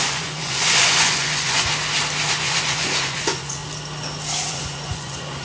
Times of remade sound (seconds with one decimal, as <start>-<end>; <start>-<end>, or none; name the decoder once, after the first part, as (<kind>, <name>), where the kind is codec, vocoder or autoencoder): 0.0-1.7 (vocoder, Vocos); 2.3-3.6; 4.5-5.4